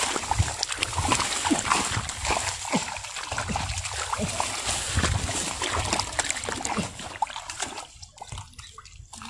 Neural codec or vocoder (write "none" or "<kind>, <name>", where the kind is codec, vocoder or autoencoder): none